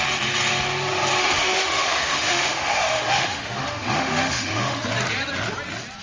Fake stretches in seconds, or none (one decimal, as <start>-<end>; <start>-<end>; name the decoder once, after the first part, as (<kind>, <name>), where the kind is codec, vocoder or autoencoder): 1.2-4.8 (autoencoder, DAC-VAE)

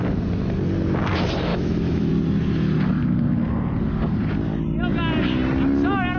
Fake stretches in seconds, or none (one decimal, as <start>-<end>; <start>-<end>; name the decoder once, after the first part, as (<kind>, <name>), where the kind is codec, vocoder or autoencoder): 1.5-2.1 (autoencoder, DAC-VAE)

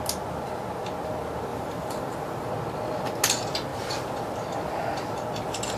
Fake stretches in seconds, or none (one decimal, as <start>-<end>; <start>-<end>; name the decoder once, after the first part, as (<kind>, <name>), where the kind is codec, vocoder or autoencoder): 1.5-2.5 (vocoder, BigVGAN v2)

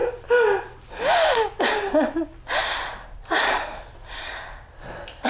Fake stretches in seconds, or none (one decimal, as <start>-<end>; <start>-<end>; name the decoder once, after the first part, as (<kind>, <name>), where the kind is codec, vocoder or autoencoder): 3.2-5.3 (vocoder, BigVGAN v2)

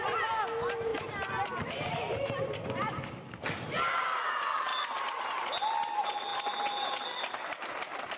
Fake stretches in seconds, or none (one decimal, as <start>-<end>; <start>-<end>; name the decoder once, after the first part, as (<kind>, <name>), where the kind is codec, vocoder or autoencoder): none